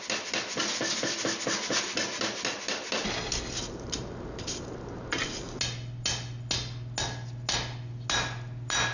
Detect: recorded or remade recorded